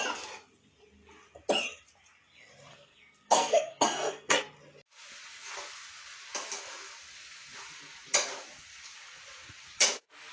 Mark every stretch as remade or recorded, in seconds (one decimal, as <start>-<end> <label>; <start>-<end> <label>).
0.0-2.7 recorded; 2.7-4.4 remade; 4.4-10.3 recorded